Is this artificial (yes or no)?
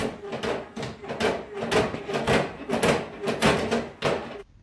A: no